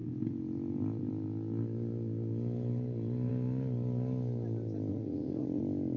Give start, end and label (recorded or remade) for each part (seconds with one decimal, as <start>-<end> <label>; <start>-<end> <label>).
0.0-4.9 recorded; 4.9-5.6 remade; 5.6-6.0 recorded